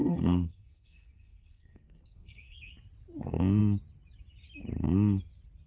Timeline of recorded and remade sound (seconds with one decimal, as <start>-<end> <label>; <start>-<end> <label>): 0.0-2.7 remade; 2.7-5.7 recorded